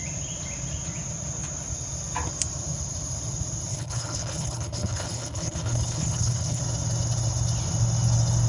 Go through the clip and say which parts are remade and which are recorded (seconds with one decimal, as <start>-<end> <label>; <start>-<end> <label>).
0.0-3.7 recorded; 3.7-6.6 remade; 6.6-8.5 recorded